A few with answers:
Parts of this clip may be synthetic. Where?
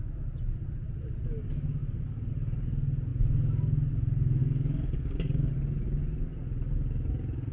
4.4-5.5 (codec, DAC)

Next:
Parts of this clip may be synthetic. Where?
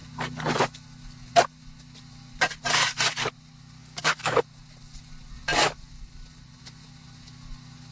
3.8-4.4 (codec, DAC)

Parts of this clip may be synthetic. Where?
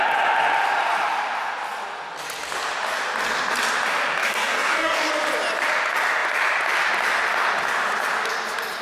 4.2-5.1 (codec, DAC)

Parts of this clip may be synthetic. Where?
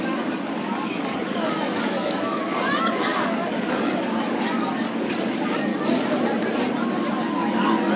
0.0-5.7 (codec, DAC); 7.1-8.0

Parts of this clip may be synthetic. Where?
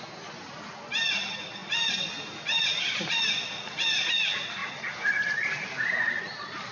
none